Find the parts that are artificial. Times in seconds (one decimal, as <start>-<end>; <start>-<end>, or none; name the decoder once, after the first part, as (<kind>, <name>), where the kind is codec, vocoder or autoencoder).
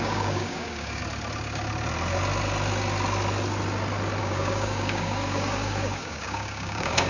0.0-1.0 (codec, DAC); 4.2-7.1